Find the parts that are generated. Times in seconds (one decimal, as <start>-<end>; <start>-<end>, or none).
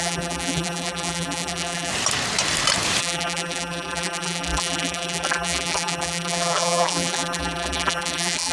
0.0-1.9; 3.0-8.5